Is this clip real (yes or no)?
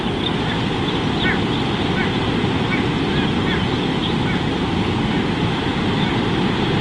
yes